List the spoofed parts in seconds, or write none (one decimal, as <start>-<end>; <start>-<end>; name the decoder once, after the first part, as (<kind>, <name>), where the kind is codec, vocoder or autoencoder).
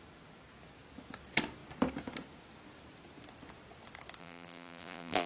4.2-5.3 (vocoder, BigVGAN v2)